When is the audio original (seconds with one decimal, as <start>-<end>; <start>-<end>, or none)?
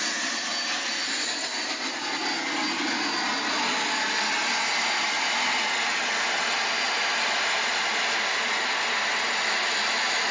0.0-10.3